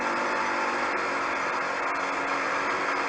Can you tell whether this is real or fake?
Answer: real